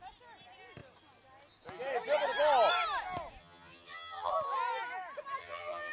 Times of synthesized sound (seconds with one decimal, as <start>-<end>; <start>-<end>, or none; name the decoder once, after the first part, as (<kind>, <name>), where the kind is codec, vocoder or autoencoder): 3.4-4.3 (vocoder, HiFi-GAN); 5.4-5.9